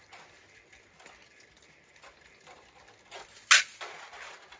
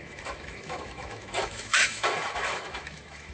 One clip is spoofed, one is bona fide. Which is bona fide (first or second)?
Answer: first